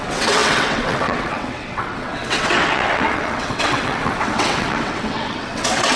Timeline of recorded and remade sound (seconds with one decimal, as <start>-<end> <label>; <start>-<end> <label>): 0.0-6.0 remade